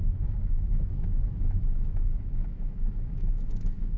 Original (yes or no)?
no